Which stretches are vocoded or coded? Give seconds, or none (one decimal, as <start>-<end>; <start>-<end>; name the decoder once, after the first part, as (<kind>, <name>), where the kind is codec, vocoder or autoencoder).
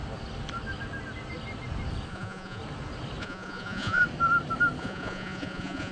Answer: 2.1-2.6 (vocoder, Vocos); 3.2-4.0; 4.8-5.9